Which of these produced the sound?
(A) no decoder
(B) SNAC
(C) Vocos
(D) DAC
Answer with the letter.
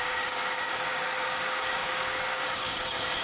D